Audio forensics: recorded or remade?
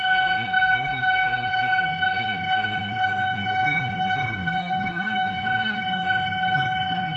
remade